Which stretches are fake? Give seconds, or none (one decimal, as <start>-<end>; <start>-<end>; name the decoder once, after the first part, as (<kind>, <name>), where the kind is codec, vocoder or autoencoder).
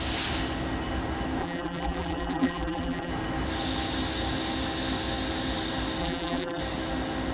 1.4-3.1 (vocoder, BigVGAN v2); 6.0-6.6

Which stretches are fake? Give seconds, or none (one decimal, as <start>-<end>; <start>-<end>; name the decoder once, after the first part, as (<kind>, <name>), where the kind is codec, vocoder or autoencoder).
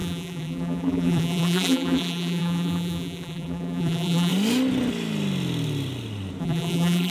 0.0-4.3 (vocoder, BigVGAN v2); 6.4-7.1